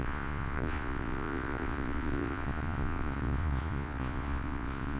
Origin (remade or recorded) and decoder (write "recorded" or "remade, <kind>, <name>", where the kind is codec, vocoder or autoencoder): remade, vocoder, Vocos